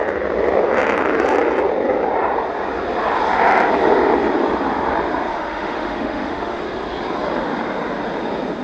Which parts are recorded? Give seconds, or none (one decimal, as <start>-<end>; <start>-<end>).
0.0-5.3; 6.6-8.6